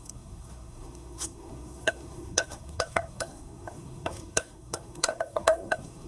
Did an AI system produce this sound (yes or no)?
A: yes